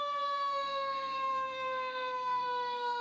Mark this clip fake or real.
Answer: fake